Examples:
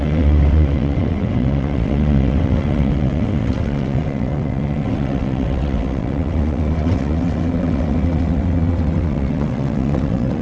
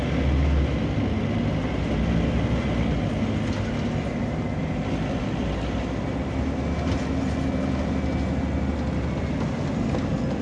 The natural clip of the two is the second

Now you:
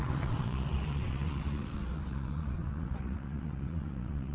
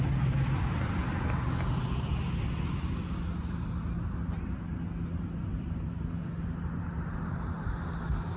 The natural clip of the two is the second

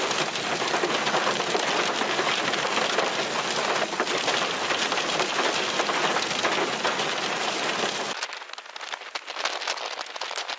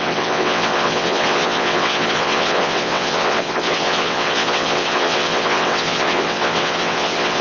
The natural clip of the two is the first